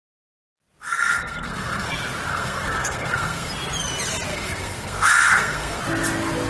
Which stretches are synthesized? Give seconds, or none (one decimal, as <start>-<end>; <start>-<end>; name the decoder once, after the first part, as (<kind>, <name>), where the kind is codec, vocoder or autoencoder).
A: 0.9-1.9 (codec, SNAC); 2.3-3.5; 4.3-5.8